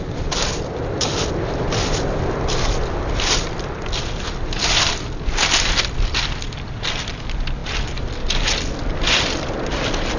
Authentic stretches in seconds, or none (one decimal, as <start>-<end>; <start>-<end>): 0.0-10.2